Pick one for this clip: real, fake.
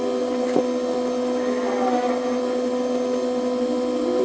real